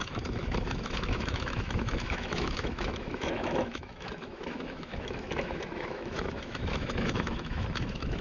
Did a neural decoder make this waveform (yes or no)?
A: yes